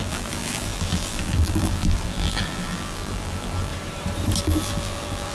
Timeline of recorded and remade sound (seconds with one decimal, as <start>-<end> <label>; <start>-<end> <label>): 0.0-3.7 remade; 3.7-4.4 recorded; 4.4-5.3 remade